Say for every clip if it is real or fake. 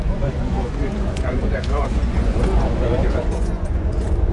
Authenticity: fake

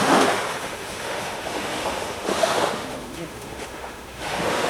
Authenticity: fake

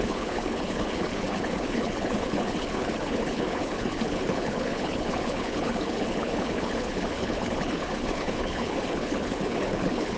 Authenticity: fake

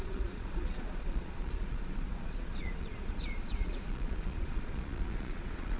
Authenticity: fake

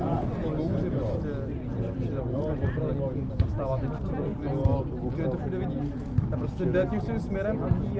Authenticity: real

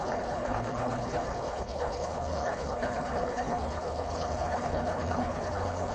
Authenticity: fake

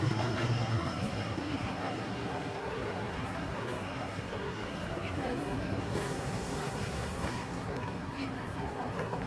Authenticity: fake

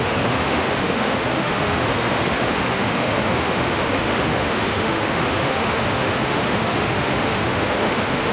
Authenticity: fake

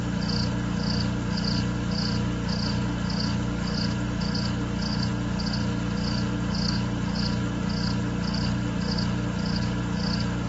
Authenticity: real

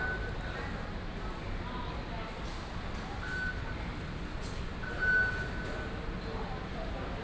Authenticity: real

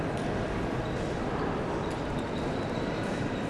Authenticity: fake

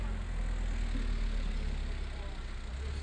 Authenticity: real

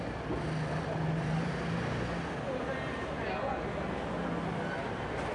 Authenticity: real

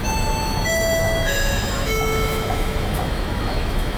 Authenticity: fake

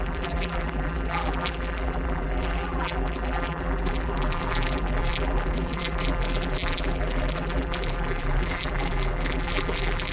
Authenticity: fake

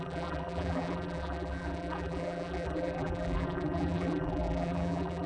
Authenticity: fake